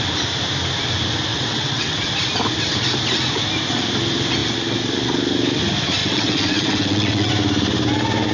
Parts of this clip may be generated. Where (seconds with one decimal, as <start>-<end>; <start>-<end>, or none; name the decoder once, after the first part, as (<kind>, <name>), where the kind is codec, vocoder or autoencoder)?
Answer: 1.3-2.1 (vocoder, WaveNeXt); 6.0-7.3